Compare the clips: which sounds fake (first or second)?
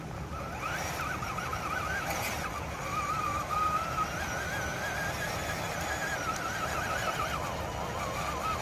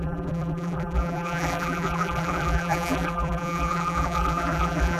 second